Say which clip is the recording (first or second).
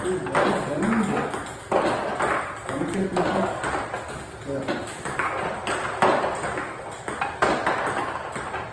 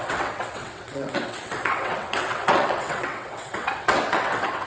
first